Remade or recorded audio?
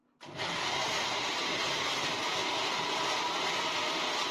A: recorded